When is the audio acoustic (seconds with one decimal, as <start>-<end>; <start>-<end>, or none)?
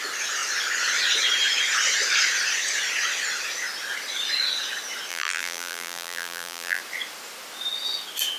0.0-5.1; 6.8-8.4